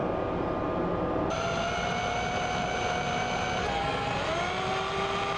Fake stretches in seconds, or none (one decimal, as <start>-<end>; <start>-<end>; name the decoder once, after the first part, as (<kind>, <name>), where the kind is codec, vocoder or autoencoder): 3.6-4.1 (codec, SNAC)